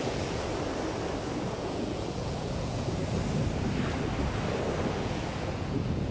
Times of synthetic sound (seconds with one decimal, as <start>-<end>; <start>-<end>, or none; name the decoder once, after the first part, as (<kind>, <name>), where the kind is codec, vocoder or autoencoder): 0.0-0.5 (vocoder, Vocos); 1.4-3.0; 4.9-6.1